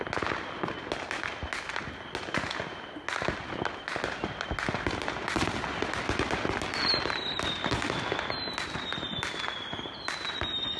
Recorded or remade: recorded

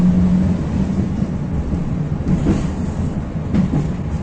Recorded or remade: recorded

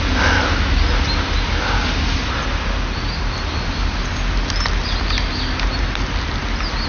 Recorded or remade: recorded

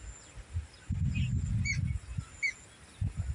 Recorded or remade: recorded